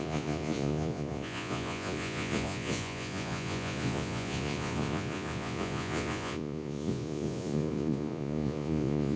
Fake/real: fake